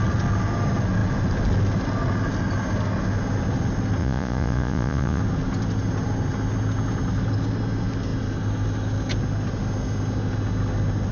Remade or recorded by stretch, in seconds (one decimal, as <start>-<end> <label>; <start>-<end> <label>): 0.0-4.0 recorded; 4.0-5.2 remade; 5.2-11.1 recorded